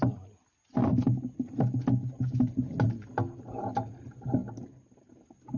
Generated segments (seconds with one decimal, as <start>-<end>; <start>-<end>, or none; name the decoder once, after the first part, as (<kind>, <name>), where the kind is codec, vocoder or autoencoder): none